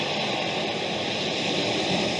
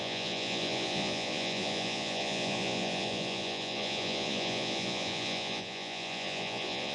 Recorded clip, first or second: first